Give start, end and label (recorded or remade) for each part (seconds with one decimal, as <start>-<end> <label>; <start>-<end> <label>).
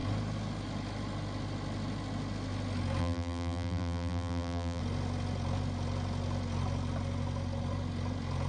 0.0-3.0 recorded; 3.0-4.8 remade; 4.8-8.5 recorded